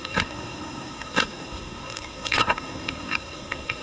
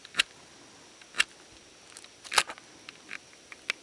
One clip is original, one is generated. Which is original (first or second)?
second